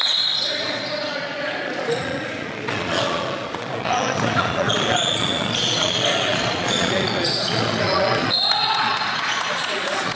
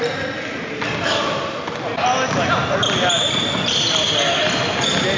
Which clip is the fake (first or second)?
first